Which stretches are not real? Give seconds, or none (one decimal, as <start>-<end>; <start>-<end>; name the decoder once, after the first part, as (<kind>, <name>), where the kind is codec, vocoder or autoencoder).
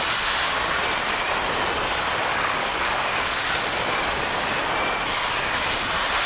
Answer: 2.3-3.7 (codec, DAC)